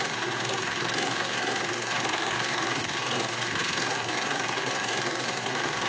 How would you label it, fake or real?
fake